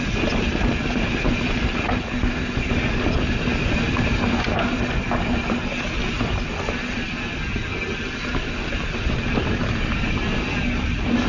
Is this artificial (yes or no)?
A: no